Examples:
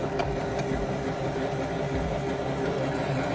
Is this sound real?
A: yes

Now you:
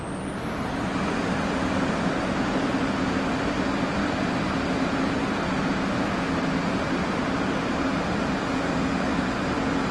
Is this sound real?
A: yes